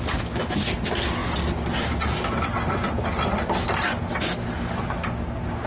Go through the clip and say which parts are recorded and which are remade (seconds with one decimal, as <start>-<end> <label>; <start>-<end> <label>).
0.0-5.7 recorded